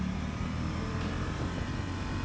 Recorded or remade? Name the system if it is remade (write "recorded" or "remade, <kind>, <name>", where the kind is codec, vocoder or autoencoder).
recorded